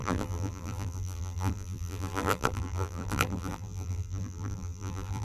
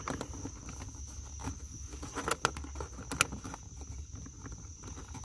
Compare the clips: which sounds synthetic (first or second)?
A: first